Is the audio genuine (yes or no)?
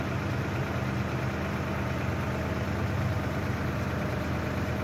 yes